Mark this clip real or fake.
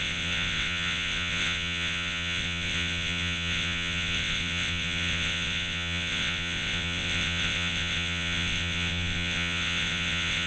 fake